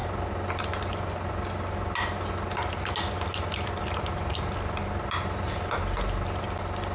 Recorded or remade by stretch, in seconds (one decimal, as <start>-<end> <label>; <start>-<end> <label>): 0.0-6.9 recorded